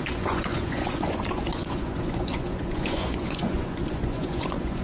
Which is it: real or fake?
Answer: fake